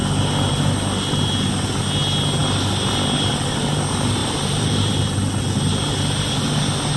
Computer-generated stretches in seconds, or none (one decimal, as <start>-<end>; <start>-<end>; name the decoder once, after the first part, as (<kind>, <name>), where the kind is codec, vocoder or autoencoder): 4.2-4.9 (vocoder, BigVGAN v2)